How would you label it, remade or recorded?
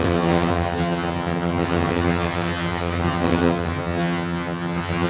remade